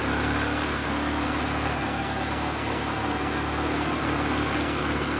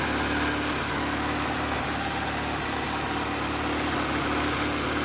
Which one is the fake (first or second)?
first